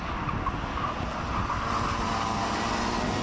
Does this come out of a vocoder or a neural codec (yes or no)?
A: no